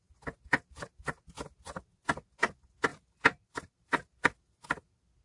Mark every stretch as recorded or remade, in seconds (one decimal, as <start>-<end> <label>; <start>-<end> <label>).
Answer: 0.0-2.9 recorded; 2.9-4.2 remade; 4.2-5.2 recorded